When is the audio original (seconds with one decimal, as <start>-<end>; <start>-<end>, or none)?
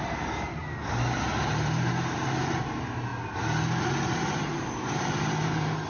0.6-1.4; 3.1-3.8